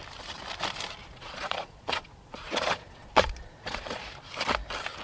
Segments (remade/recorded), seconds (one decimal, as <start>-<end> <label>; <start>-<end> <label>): 0.0-1.0 recorded; 1.0-4.0 remade; 4.0-5.0 recorded